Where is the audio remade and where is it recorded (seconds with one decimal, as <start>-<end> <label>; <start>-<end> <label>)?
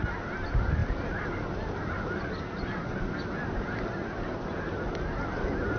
0.0-5.8 recorded